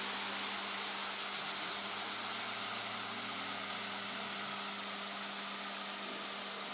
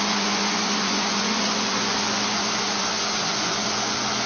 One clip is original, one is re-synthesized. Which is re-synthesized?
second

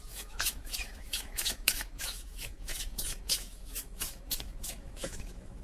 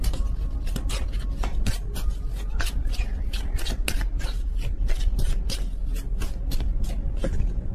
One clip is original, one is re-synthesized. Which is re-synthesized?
first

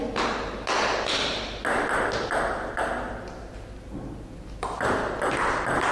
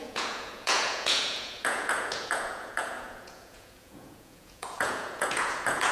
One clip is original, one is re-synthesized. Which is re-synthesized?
second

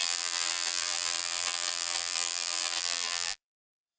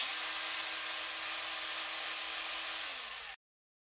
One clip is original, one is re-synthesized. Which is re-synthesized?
first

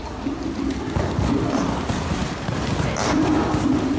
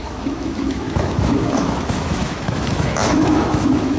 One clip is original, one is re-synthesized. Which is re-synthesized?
second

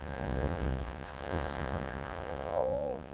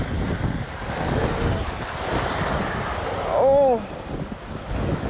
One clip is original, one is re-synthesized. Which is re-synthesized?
first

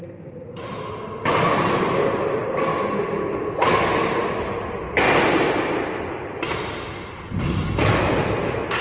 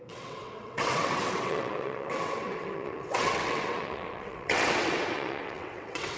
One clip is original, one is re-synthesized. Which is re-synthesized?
second